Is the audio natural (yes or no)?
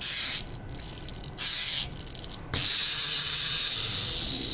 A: yes